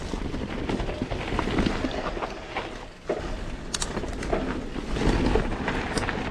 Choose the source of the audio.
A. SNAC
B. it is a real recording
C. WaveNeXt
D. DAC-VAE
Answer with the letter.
B